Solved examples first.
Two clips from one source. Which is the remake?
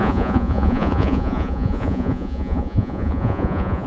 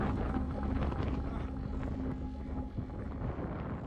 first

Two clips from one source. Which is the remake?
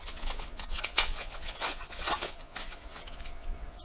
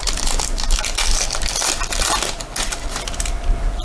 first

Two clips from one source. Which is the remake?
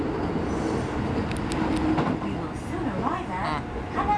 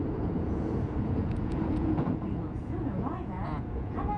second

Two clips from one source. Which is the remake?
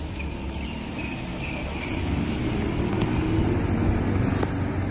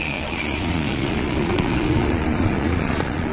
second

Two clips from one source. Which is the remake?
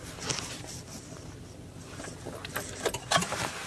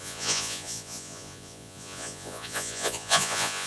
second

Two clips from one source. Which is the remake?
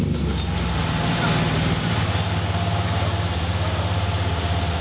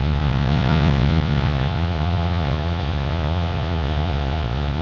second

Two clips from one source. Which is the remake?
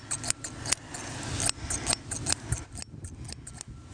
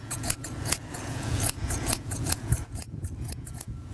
second